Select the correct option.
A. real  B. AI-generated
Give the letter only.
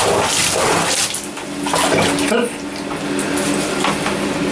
A